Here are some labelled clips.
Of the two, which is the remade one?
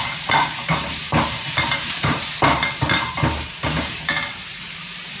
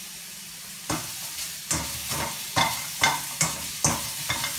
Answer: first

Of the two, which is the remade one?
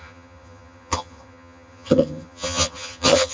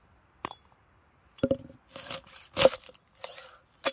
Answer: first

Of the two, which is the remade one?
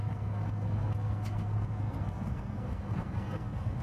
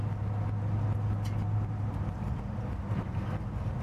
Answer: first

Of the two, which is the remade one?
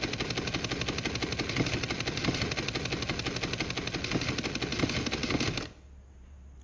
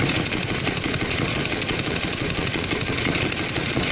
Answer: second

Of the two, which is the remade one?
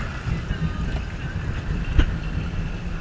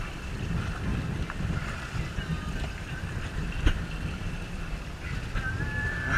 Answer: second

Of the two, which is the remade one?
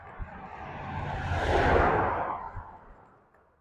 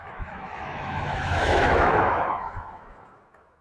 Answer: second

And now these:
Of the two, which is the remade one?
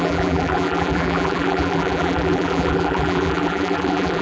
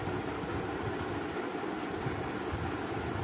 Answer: first